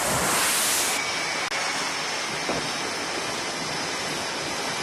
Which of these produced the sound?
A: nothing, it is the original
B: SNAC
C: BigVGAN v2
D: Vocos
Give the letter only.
A